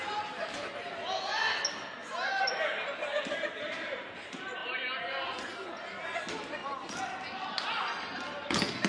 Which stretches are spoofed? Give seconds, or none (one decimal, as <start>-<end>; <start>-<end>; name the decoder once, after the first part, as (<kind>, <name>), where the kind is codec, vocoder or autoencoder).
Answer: none